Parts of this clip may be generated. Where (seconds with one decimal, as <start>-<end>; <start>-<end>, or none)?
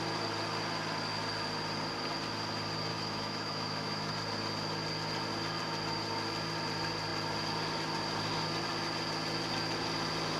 2.9-4.1